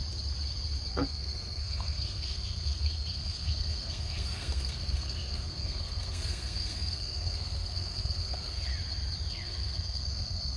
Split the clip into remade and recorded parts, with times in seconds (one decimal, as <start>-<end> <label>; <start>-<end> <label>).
0.0-0.9 recorded; 0.9-8.7 remade; 8.7-9.3 recorded; 9.3-10.6 remade